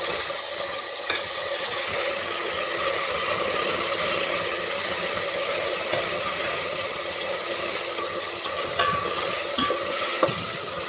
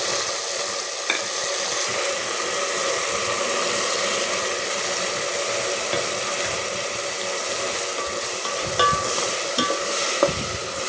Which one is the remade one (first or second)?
first